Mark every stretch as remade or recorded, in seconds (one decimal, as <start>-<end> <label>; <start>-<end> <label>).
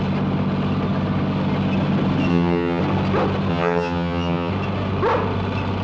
0.0-2.3 recorded; 2.3-2.8 remade; 2.8-3.5 recorded; 3.5-4.5 remade; 4.5-5.8 recorded